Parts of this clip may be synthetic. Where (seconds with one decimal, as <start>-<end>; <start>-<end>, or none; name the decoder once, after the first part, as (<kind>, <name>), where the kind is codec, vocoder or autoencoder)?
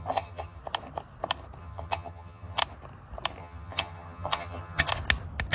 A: 0.0-0.6 (vocoder, HiFi-GAN); 1.6-2.6; 3.4-4.9